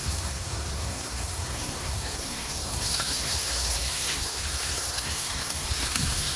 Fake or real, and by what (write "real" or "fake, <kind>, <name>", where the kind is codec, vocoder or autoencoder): fake, codec, SNAC